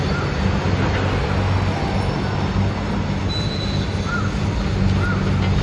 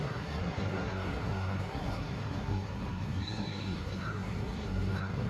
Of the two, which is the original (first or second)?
first